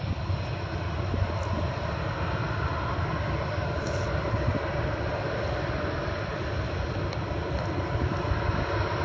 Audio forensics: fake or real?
real